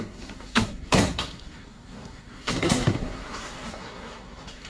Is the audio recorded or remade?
remade